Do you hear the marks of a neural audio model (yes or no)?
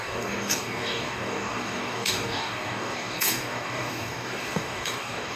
yes